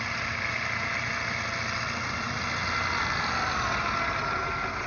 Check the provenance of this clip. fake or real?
real